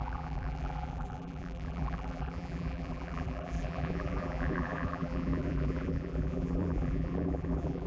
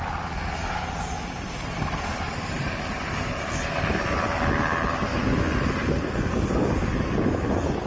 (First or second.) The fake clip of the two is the first